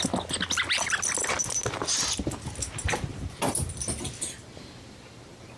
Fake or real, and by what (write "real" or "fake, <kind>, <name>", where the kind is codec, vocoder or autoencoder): real